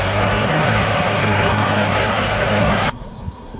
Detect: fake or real fake